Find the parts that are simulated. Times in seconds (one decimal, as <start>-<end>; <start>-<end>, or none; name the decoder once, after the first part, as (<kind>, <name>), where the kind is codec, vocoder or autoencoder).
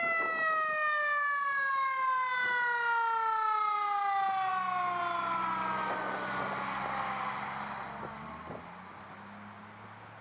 none